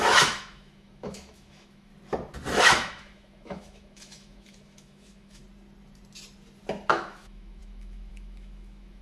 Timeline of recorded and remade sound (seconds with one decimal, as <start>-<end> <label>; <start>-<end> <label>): 0.0-1.9 remade; 1.9-2.6 recorded; 2.6-5.4 remade; 5.4-6.9 recorded; 6.9-9.0 remade